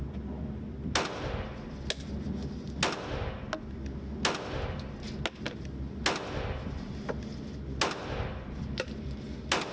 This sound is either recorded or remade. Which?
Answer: recorded